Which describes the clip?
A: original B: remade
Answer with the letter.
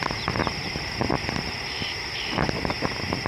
A